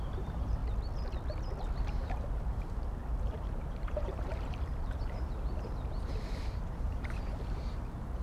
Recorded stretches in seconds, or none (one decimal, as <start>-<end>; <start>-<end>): 0.6-1.8